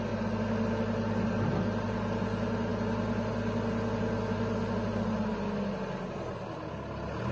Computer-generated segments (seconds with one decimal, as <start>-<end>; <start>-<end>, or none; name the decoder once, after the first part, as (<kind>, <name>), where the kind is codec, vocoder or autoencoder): none